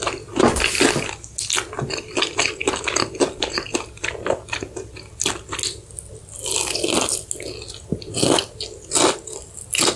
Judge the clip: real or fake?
real